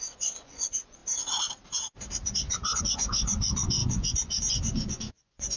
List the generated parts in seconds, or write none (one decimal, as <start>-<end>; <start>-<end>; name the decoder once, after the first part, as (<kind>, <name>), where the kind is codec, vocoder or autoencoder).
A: 0.0-1.0 (vocoder, Vocos); 2.8-5.6